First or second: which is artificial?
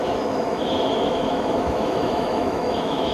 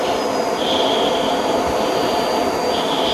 first